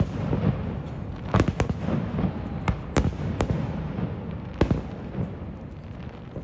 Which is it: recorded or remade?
recorded